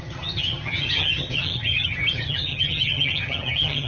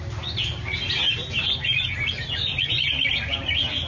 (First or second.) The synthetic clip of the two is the first